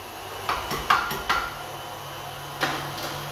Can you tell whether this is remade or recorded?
recorded